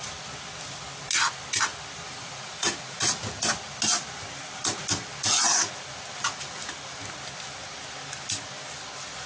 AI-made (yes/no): no